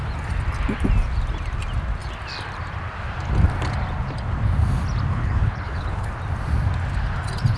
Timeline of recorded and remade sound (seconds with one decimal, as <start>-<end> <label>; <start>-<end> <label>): 0.0-5.1 recorded; 5.1-6.1 remade; 6.1-7.6 recorded